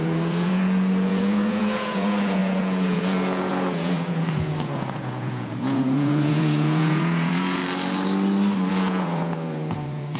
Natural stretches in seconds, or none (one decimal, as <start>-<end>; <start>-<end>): 7.6-8.7